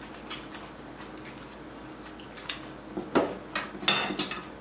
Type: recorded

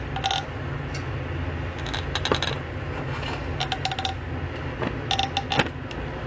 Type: recorded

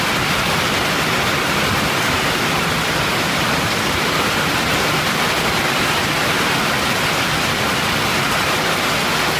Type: recorded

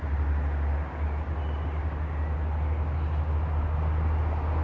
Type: recorded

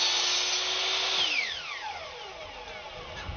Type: recorded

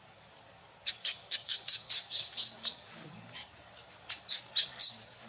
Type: remade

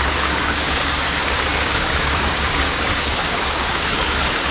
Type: remade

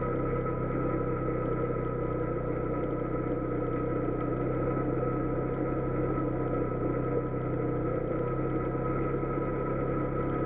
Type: recorded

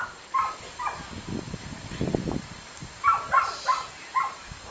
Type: recorded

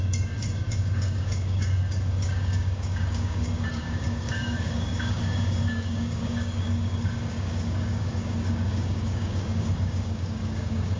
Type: remade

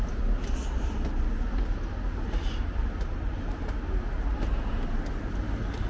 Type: recorded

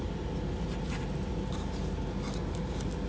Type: recorded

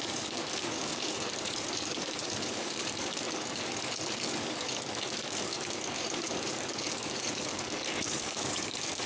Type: remade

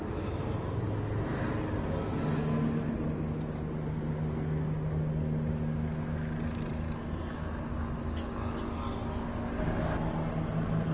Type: recorded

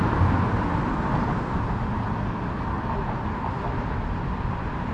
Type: recorded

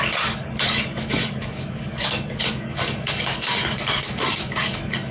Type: remade